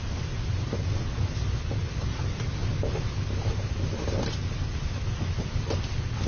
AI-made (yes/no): no